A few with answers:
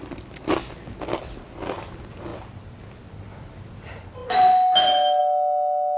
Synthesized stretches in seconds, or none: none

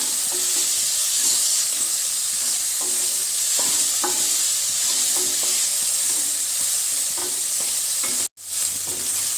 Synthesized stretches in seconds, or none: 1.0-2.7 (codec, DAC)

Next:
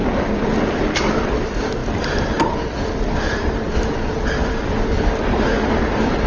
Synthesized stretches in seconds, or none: none